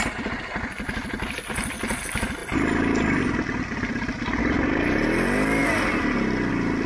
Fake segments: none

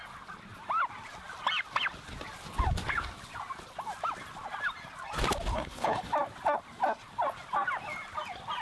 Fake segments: 5.5-6.1 (codec, HILCodec)

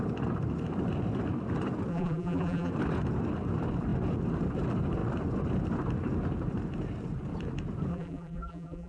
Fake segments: 1.9-2.7 (vocoder, BigVGAN v2); 7.9-8.9

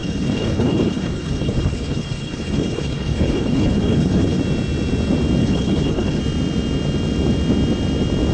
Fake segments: 0.0-4.4 (codec, HILCodec); 5.4-6.2

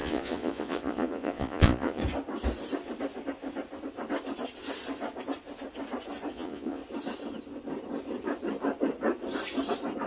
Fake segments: 0.0-2.0 (vocoder, Vocos); 6.3-6.8